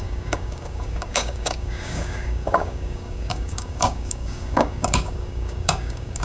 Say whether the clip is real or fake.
fake